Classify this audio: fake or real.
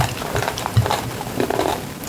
fake